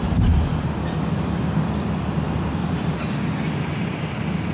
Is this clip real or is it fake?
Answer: real